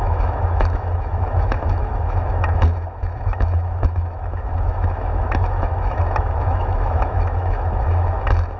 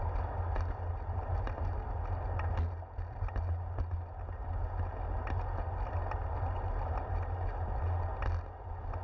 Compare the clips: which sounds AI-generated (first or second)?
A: first